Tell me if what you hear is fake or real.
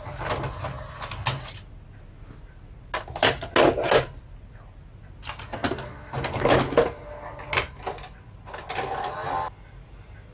real